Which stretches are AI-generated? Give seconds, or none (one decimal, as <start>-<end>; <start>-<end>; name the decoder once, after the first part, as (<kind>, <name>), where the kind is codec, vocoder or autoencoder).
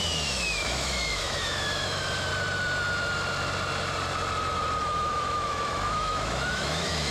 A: 0.0-2.3 (autoencoder, DAC-VAE); 4.8-7.1